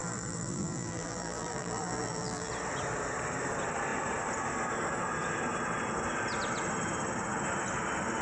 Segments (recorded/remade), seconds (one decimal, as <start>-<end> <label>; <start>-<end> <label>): 0.0-2.5 remade; 2.5-8.2 recorded